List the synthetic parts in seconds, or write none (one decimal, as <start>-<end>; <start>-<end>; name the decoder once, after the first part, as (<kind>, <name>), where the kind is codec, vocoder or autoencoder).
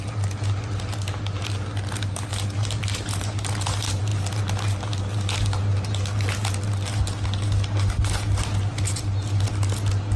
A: 2.3-3.5 (vocoder, BigVGAN v2)